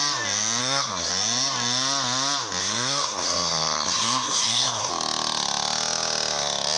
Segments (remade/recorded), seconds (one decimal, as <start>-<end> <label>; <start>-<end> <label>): 0.0-0.6 recorded; 0.6-1.1 remade; 1.1-2.6 recorded; 2.6-4.9 remade; 4.9-6.8 recorded